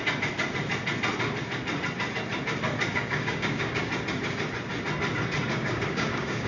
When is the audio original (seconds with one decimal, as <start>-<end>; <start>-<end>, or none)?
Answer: 0.0-2.9; 3.9-5.5

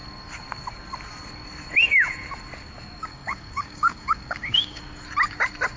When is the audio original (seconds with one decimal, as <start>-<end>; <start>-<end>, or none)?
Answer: 0.0-3.1; 4.8-5.8

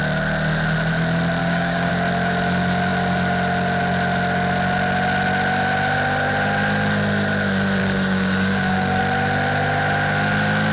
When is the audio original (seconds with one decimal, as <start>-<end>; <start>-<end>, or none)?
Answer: 0.0-1.4; 1.9-7.8; 9.0-10.7

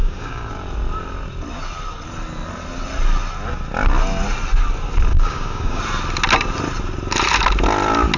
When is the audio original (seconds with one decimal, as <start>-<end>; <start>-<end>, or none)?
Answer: 0.5-5.1; 5.8-8.2

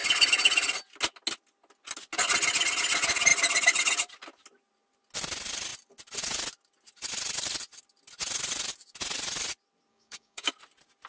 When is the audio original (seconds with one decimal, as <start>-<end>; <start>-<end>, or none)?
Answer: 0.0-9.9; 10.5-11.1

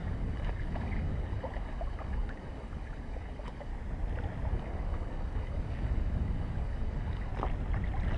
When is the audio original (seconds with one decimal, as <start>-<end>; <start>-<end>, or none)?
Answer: 3.7-4.5; 7.3-8.2

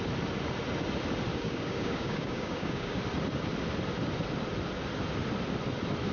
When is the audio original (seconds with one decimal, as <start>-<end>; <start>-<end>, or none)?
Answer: 0.0-1.3; 3.0-6.1

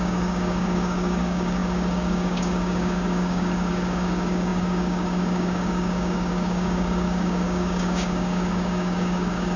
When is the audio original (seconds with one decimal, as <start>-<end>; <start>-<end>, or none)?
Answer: none